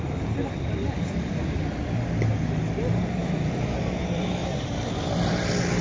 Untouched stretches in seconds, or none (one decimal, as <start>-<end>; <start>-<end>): 0.0-0.8; 1.4-3.2; 3.8-4.4; 5.3-5.8